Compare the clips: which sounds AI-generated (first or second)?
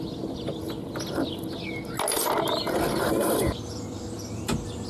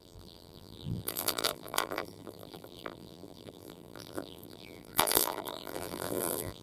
second